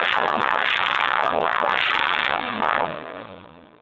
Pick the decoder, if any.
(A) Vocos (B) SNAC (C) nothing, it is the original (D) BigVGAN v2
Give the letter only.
A